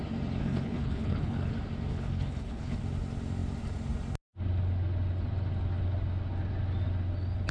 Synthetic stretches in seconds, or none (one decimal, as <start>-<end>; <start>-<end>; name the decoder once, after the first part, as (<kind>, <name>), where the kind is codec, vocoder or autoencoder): 0.4-1.5 (codec, HILCodec); 1.9-2.8